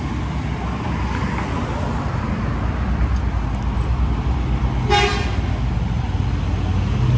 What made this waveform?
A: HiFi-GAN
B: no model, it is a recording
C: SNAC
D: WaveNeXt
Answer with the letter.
B